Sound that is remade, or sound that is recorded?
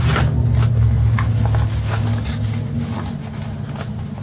recorded